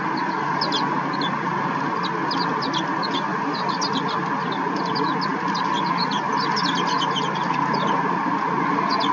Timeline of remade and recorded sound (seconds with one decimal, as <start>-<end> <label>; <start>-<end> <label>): 0.0-9.1 recorded